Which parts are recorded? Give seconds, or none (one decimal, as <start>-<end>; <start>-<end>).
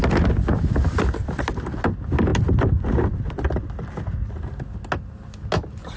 0.0-6.0